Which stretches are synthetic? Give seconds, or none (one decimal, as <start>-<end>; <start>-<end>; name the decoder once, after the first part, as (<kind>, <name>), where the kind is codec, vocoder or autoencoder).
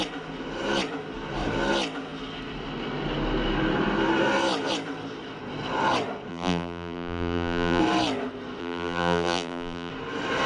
6.3-7.8 (vocoder, BigVGAN v2); 8.6-9.9